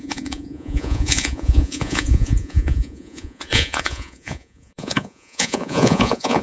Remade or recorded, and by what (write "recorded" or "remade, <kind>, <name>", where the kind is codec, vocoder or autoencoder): remade, vocoder, Vocos